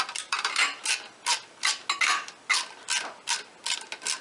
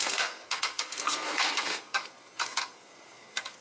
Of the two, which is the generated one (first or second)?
second